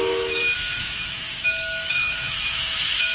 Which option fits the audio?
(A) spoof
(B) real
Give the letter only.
A